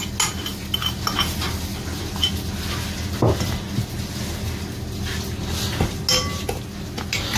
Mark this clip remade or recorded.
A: recorded